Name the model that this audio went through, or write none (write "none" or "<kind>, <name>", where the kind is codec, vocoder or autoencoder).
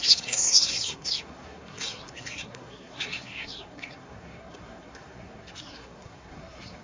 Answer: codec, SNAC